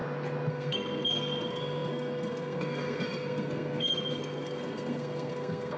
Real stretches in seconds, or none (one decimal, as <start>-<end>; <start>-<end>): 0.0-0.5